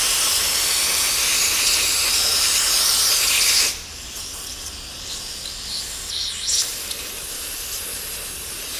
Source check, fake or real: real